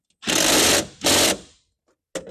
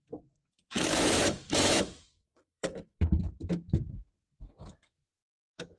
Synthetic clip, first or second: second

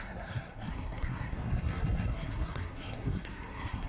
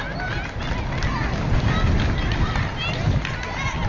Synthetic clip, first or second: first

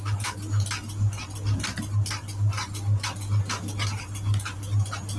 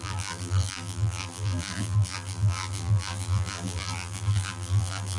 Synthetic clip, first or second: second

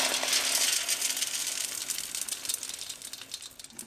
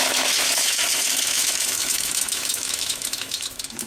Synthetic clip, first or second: second